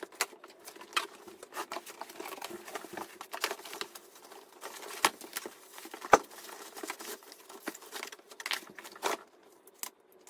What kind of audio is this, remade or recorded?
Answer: recorded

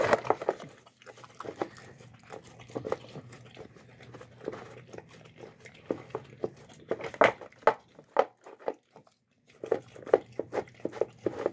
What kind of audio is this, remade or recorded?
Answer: recorded